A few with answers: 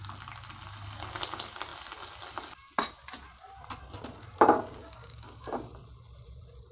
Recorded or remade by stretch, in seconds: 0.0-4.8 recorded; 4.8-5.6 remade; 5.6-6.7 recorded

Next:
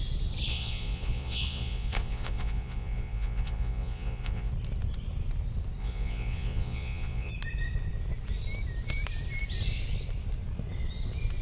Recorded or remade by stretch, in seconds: 0.0-0.5 recorded; 0.5-4.5 remade; 4.5-5.8 recorded; 5.8-7.3 remade; 7.3-11.4 recorded

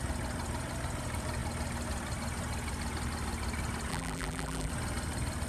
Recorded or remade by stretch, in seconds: 0.0-3.9 recorded; 3.9-4.7 remade; 4.7-5.5 recorded

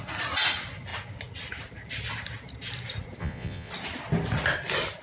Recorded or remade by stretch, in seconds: 0.0-3.2 recorded; 3.2-3.7 remade; 3.7-5.0 recorded